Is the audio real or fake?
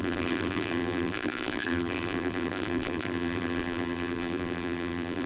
fake